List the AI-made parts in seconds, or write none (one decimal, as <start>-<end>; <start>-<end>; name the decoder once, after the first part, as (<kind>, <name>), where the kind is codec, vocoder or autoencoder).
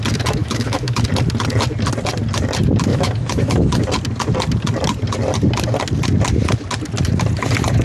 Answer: 0.4-1.0 (autoencoder, DAC-VAE); 2.9-3.7